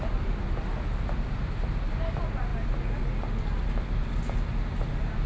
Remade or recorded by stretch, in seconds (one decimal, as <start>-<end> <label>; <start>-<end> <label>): 0.0-5.3 recorded